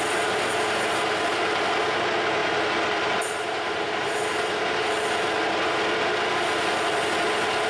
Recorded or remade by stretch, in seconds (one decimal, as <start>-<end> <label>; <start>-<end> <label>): 0.0-2.4 recorded; 2.4-4.2 remade; 4.2-7.7 recorded